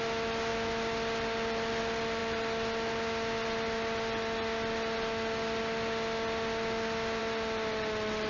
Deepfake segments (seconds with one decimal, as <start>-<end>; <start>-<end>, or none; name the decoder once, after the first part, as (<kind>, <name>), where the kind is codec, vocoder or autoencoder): none